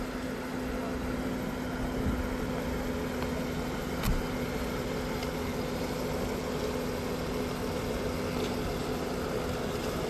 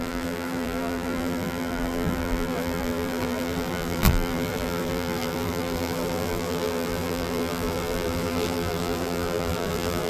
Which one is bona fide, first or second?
first